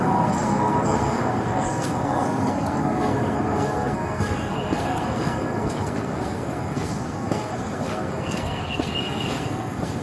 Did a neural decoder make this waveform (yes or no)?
yes